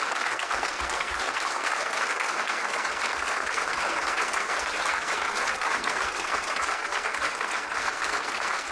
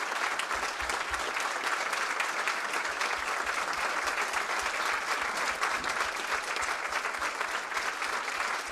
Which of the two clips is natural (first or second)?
second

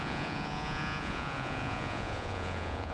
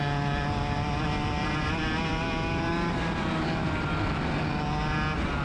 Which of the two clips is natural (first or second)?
second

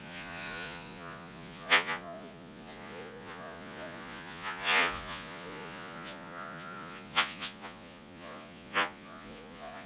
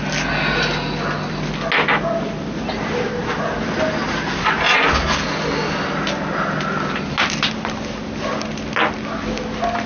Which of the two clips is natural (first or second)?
second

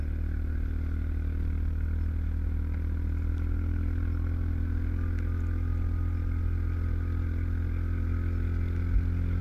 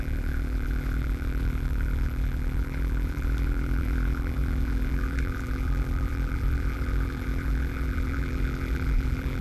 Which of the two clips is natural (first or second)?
first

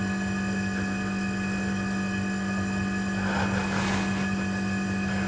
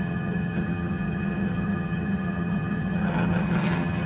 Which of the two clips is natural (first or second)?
first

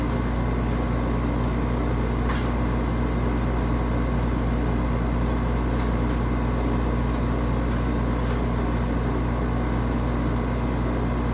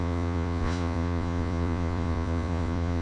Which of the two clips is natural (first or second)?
first